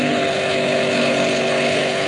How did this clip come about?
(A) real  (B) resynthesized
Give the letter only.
B